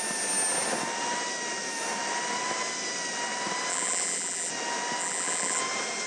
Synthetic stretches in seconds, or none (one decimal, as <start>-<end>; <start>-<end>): 3.7-4.5; 5.0-5.6